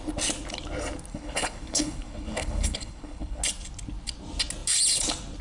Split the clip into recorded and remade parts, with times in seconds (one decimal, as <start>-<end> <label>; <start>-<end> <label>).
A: 0.0-1.1 recorded; 1.1-3.4 remade; 3.4-5.4 recorded